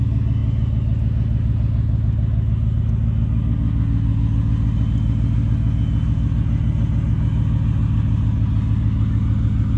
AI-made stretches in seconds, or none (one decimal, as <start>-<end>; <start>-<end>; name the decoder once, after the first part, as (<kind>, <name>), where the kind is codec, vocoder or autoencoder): none